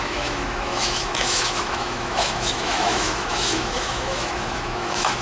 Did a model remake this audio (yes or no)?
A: yes